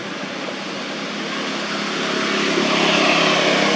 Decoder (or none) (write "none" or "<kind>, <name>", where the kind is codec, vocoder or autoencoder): none